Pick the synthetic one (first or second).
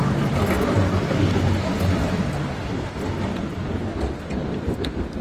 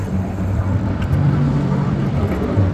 second